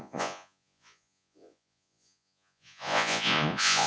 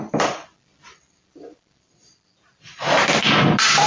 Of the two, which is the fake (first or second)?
first